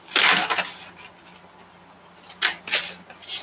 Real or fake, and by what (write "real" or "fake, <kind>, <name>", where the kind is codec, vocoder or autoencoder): real